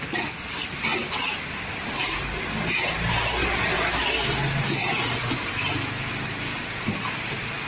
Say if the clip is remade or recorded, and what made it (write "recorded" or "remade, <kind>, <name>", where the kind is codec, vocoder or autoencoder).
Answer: recorded